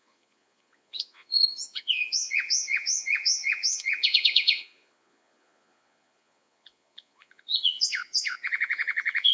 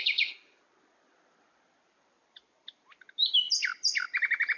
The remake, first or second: first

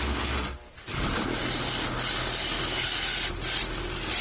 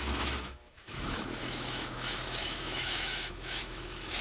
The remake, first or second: second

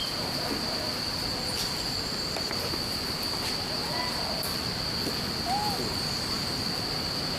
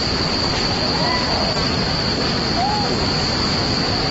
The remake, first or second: second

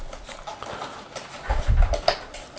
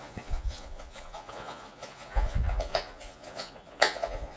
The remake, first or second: second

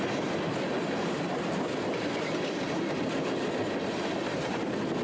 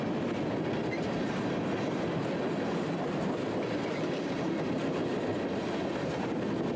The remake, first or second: first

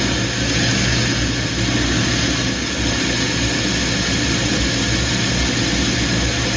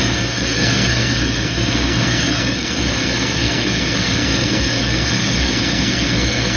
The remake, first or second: second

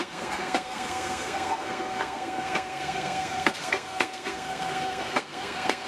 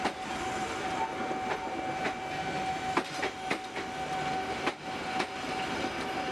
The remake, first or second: first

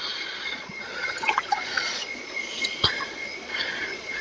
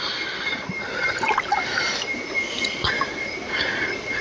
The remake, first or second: first